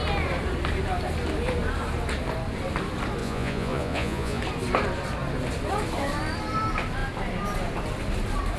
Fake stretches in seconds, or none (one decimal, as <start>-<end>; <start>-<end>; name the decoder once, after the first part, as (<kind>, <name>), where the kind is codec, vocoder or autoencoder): 3.2-4.4 (vocoder, Vocos)